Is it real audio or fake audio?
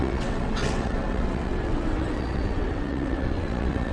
fake